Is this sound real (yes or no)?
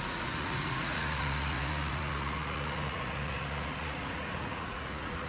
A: no